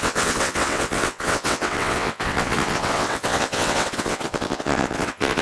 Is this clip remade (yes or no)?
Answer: yes